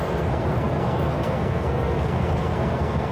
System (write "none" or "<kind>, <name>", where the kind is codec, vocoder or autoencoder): codec, SNAC